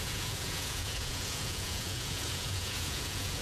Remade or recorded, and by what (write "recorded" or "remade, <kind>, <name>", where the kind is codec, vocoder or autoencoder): remade, vocoder, Vocos